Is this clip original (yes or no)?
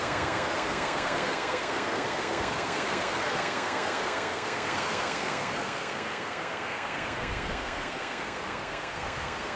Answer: no